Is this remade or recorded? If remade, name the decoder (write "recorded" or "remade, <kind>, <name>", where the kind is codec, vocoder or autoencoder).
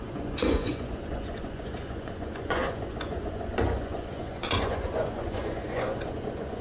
remade, vocoder, Vocos